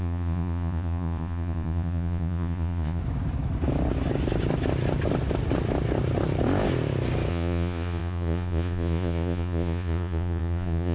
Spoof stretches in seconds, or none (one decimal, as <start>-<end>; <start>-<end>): 0.0-3.0; 7.3-10.9